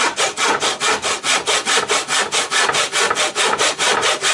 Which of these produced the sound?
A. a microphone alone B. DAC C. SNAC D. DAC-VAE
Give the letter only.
A